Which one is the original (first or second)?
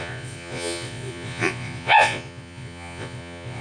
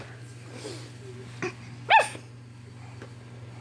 second